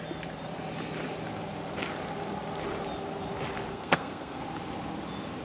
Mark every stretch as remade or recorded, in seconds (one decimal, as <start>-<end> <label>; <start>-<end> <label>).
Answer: 0.0-3.7 recorded; 3.7-4.4 remade; 4.4-5.4 recorded